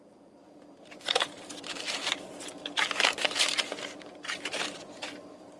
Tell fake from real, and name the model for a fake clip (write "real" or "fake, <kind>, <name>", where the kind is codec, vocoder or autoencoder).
fake, vocoder, BigVGAN v2